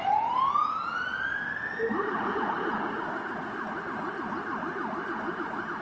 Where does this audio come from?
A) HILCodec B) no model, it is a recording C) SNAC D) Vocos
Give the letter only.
B